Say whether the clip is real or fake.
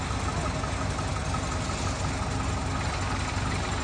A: real